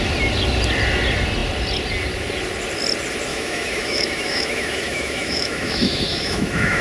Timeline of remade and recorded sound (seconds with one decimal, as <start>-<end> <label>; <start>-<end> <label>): 0.0-3.3 recorded; 3.3-6.8 remade